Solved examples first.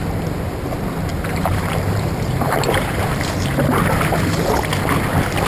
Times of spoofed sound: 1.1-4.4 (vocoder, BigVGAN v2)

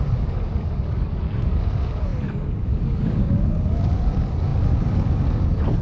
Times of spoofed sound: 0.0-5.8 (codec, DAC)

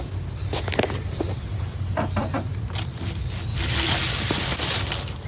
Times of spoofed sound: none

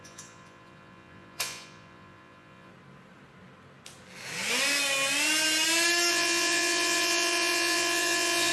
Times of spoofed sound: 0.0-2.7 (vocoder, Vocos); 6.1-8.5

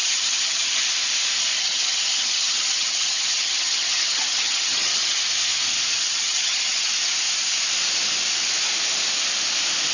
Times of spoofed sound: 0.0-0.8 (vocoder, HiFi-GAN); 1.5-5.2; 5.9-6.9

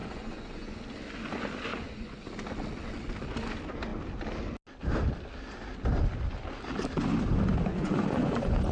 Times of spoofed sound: 0.0-0.8 (vocoder, Vocos); 1.7-2.2; 7.7-8.7

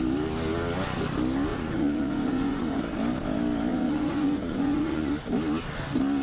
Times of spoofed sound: 1.5-2.8 (vocoder, Vocos); 3.7-5.1